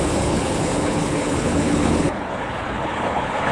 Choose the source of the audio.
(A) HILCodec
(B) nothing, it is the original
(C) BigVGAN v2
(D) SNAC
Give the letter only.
A